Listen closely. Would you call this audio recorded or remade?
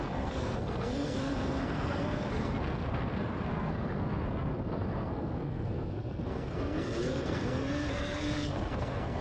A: remade